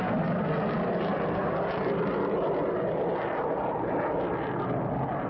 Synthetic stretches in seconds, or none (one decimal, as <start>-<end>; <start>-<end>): none

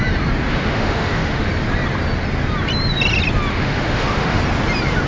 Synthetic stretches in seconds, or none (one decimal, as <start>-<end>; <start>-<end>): 0.5-1.5; 3.5-4.4